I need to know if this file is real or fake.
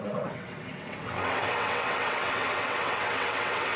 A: fake